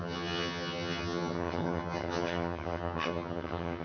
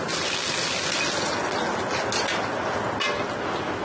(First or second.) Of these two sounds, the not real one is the first